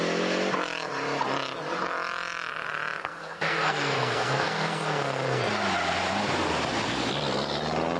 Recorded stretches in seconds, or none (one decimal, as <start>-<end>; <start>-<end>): 0.0-3.0; 5.5-8.0